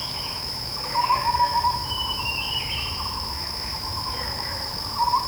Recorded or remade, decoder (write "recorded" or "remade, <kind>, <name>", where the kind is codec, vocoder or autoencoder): remade, autoencoder, DAC-VAE